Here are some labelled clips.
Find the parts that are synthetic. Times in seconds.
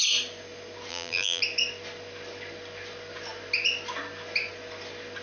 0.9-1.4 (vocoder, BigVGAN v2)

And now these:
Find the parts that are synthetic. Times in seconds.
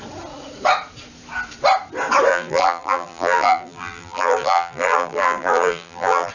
2.3-6.3 (vocoder, BigVGAN v2)